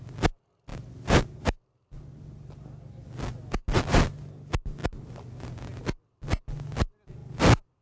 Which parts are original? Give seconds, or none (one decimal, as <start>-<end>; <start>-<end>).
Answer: 0.0-7.8